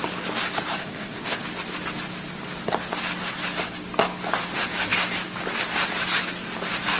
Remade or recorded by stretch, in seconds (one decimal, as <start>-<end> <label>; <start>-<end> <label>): 0.0-0.8 recorded; 0.8-1.4 remade; 1.4-7.0 recorded